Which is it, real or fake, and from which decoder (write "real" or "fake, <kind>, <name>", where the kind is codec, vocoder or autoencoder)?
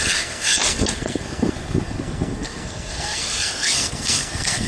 fake, codec, SNAC